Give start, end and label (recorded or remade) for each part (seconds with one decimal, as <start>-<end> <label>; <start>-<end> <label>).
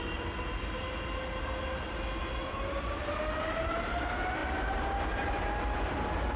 0.0-2.4 recorded; 2.4-3.2 remade; 3.2-4.4 recorded; 4.4-5.4 remade; 5.4-6.4 recorded